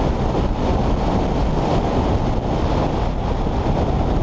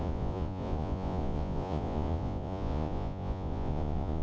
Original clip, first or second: first